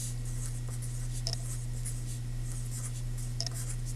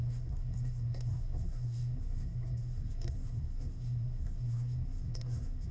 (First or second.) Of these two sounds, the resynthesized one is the second